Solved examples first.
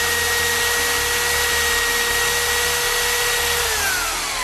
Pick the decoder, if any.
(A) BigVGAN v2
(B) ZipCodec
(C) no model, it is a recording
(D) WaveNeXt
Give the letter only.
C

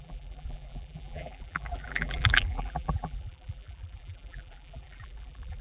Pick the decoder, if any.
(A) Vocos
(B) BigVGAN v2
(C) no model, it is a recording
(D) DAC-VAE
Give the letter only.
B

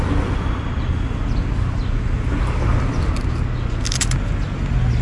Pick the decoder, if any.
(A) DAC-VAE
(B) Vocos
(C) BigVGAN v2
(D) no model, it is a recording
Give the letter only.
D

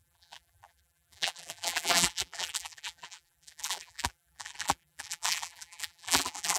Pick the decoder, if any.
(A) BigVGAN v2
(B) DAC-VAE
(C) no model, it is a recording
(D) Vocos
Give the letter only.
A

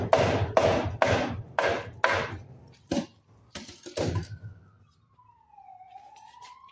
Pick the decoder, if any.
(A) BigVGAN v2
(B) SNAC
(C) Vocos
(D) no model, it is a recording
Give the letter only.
D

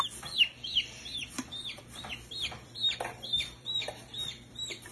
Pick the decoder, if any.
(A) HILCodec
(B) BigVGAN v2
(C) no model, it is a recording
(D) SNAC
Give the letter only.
B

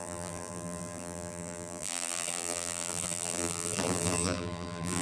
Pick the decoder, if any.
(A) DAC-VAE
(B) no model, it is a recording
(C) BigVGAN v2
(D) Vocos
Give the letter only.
C